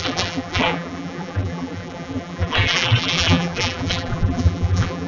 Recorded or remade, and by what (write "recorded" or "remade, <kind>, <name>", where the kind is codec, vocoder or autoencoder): remade, vocoder, BigVGAN v2